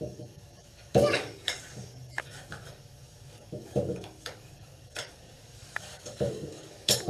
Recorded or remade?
remade